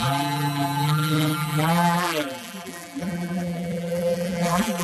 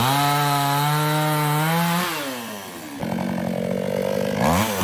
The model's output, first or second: first